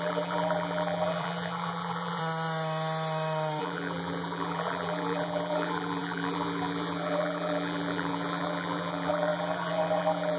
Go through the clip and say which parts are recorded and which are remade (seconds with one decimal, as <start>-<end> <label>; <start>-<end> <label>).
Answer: 0.0-2.2 remade; 2.2-3.6 recorded; 3.6-10.4 remade